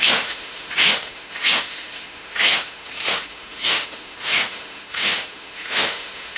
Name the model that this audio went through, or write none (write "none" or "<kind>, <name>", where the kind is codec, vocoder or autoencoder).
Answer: autoencoder, DAC-VAE